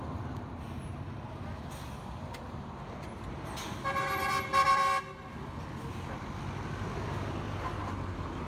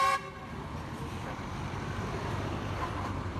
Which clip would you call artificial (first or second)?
second